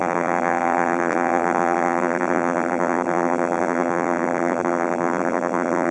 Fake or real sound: fake